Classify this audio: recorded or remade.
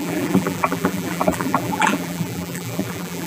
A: remade